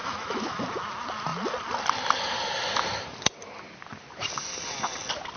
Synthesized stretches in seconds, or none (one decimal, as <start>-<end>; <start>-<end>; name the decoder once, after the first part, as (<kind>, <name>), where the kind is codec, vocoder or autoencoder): 0.0-0.6 (autoencoder, DAC-VAE)

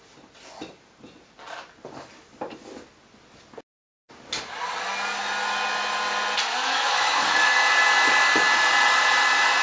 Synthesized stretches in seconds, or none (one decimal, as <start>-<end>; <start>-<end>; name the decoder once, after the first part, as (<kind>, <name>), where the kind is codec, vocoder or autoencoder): 6.5-7.5 (autoencoder, DAC-VAE)

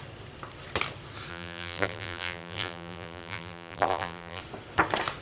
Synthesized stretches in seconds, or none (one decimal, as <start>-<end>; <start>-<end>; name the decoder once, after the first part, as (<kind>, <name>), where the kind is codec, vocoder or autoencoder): 1.3-4.4 (vocoder, BigVGAN v2)

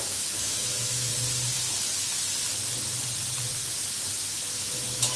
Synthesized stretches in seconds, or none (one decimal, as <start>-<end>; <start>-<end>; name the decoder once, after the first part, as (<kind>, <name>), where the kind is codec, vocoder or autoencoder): 0.0-1.1 (autoencoder, DAC-VAE); 4.2-5.2

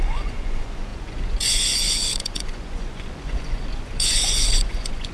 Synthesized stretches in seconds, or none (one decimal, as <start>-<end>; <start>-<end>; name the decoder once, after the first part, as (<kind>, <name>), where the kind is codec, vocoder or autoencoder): 0.0-5.1 (vocoder, Vocos)